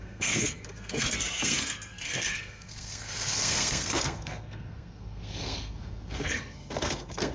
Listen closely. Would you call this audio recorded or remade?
remade